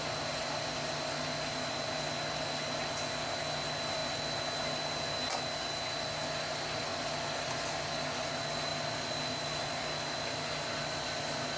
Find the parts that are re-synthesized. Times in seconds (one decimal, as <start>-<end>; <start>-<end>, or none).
none